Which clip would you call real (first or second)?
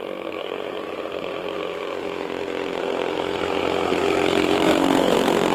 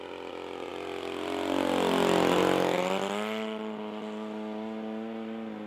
second